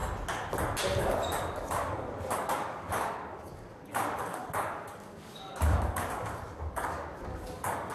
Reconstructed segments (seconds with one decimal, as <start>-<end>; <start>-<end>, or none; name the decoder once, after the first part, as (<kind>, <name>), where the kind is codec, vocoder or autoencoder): 1.0-7.9 (codec, DAC)

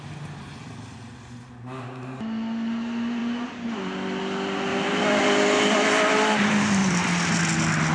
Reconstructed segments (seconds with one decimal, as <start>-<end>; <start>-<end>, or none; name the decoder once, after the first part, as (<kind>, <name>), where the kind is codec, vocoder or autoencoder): 4.7-5.2 (vocoder, BigVGAN v2); 6.8-7.4

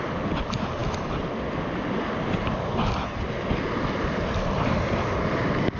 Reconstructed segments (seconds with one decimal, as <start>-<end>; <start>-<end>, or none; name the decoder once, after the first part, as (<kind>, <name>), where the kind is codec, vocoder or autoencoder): none

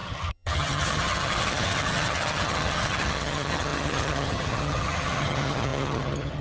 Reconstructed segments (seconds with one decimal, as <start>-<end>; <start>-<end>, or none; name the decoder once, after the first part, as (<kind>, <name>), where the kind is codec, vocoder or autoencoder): 0.0-6.4 (vocoder, HiFi-GAN)

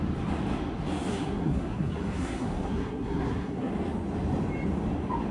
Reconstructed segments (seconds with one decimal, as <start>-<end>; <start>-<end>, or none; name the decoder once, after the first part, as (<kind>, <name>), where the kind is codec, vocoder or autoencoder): 1.1-3.7 (codec, SNAC)